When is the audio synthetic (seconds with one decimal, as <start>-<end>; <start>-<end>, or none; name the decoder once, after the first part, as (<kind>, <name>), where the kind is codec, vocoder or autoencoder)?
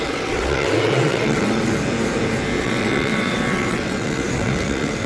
0.0-1.7 (vocoder, WaveNeXt); 2.6-5.1